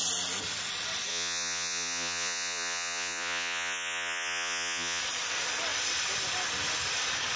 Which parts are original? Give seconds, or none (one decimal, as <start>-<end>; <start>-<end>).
0.0-1.1; 5.0-7.4